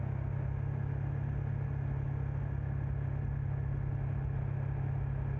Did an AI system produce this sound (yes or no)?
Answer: no